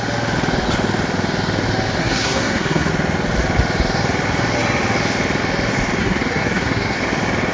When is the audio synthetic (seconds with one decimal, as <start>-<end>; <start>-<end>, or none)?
2.0-2.9; 6.0-7.0